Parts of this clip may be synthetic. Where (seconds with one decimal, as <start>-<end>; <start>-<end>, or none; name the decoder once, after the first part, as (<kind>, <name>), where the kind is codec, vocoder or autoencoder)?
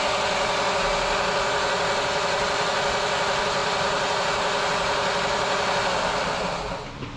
none